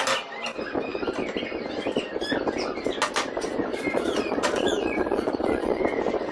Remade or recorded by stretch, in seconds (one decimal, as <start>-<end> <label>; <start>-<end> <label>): 0.0-3.7 recorded; 3.7-5.8 remade; 5.8-6.3 recorded